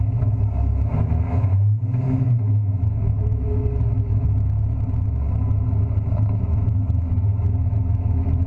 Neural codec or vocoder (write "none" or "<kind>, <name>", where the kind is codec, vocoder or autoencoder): autoencoder, DAC-VAE